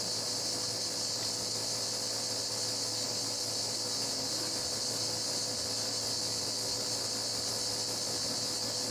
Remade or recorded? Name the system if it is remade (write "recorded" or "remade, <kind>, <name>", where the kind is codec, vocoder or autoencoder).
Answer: recorded